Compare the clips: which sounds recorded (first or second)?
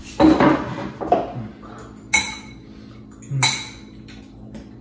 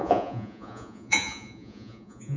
first